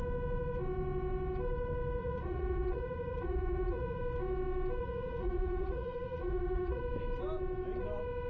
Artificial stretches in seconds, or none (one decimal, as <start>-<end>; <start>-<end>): 2.0-4.0; 4.8-6.8